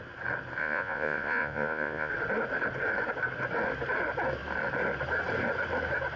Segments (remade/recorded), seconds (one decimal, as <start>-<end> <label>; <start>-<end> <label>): 0.0-0.6 recorded; 0.6-2.1 remade; 2.1-6.2 recorded